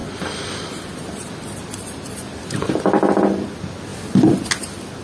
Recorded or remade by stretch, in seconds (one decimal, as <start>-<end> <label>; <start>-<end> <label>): 0.0-3.0 remade; 3.0-5.0 recorded